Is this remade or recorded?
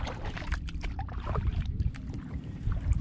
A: remade